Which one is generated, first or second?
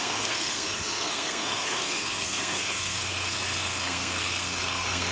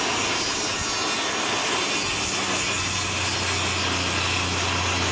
first